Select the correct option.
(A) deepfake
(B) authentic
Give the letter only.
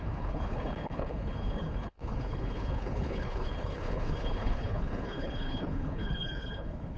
A